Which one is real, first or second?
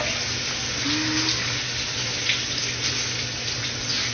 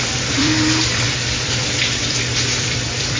first